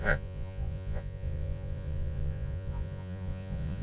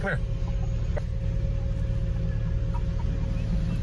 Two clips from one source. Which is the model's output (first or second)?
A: first